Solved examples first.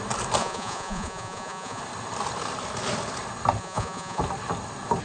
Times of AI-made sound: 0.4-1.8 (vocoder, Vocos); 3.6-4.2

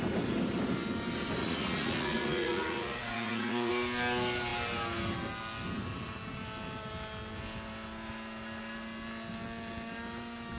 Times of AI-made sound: 1.4-3.7 (vocoder, Vocos)

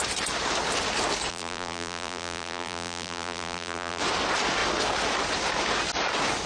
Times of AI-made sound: 1.3-4.0 (vocoder, BigVGAN v2)

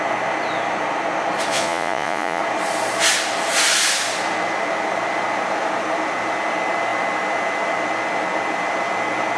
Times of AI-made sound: 1.5-2.4 (vocoder, Vocos)